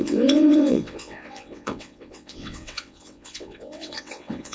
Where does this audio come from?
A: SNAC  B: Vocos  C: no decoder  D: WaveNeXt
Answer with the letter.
D